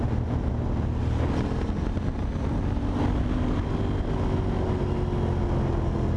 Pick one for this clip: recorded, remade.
recorded